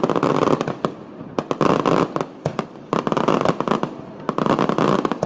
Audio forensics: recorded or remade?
recorded